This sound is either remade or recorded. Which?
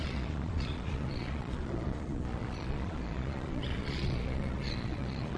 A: remade